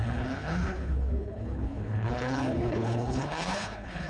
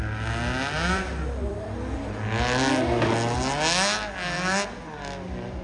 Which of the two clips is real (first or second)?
second